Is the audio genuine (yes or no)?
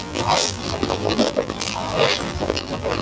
no